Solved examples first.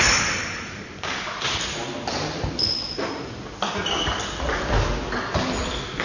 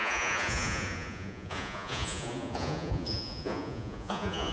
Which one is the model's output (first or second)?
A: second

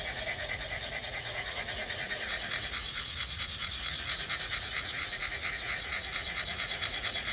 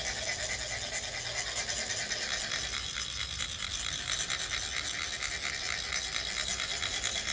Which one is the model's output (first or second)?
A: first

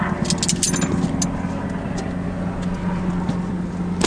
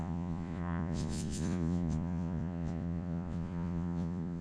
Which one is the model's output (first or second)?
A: second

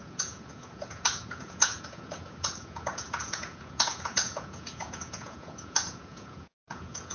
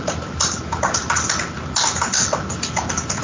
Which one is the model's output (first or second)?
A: first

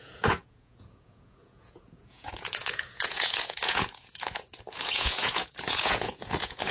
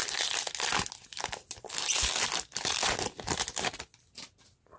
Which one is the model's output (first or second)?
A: first